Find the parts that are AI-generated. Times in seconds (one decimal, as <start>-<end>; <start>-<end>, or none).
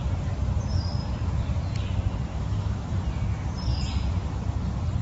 2.3-3.0